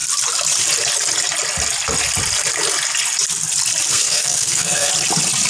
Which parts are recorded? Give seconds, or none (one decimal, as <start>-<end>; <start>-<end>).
0.0-3.9; 4.9-5.5